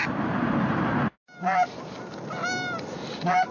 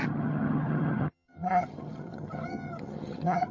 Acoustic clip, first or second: first